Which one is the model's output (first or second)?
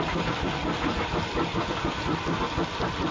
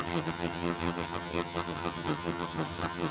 second